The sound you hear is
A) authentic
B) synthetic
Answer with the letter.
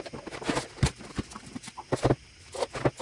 A